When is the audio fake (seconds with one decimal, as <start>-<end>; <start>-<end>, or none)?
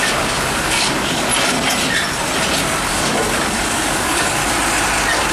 0.0-1.3; 2.9-4.4